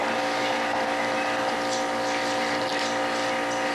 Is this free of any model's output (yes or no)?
yes